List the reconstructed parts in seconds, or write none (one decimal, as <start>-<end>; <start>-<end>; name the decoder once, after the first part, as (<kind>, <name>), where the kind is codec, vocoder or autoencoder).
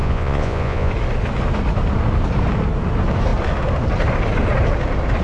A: 0.0-0.9 (vocoder, Vocos)